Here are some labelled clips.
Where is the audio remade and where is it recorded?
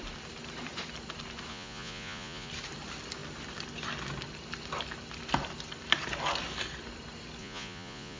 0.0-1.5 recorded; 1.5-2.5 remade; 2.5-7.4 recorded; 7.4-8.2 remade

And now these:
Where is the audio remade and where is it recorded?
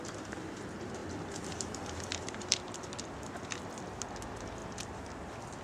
0.0-1.0 recorded; 1.0-4.0 remade; 4.0-5.6 recorded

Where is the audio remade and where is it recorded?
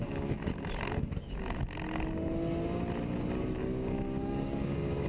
0.0-0.5 remade; 0.5-3.6 recorded; 3.6-5.1 remade